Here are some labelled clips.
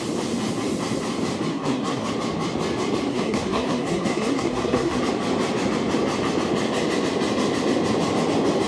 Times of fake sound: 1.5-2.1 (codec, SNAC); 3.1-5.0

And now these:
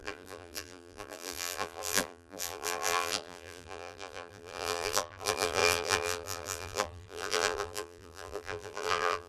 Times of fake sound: 0.0-9.3 (vocoder, BigVGAN v2)

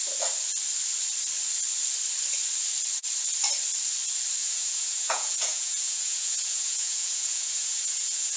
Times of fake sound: 4.4-8.4 (vocoder, Vocos)

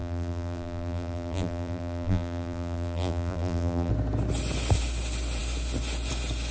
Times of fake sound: 0.0-3.9 (vocoder, BigVGAN v2)

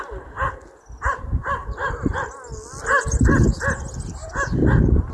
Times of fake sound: none

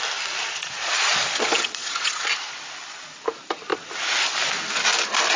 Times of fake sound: 0.4-2.2 (vocoder, Vocos)

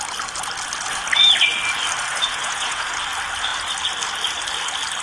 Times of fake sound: 2.1-2.9 (vocoder, Vocos)

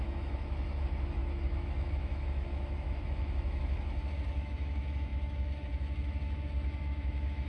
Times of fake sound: 0.0-7.5 (autoencoder, DAC-VAE)